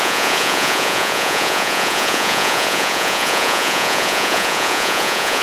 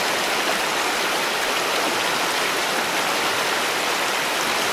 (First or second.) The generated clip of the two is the first